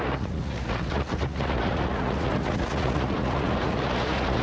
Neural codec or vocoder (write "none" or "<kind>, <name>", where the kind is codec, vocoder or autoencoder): vocoder, Vocos